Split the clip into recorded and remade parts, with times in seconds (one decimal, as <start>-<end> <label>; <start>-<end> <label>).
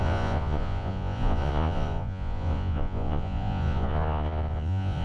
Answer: 0.0-5.0 remade